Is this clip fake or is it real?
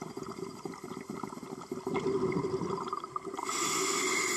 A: real